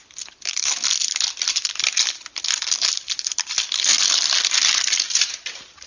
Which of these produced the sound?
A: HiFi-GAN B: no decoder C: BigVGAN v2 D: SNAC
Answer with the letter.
B